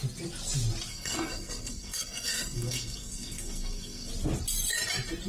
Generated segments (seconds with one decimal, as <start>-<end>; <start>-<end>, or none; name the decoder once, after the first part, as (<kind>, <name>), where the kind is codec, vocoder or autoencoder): 0.9-4.1 (codec, SNAC)